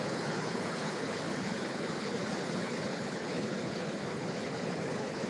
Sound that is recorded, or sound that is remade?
remade